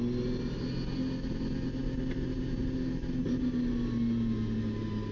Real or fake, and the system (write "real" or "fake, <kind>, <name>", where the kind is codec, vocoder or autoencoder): real